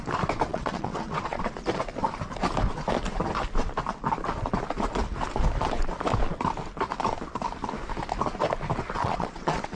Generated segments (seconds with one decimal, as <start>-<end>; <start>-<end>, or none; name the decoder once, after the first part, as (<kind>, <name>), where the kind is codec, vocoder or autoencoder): 0.5-1.4 (vocoder, Vocos); 9.0-9.8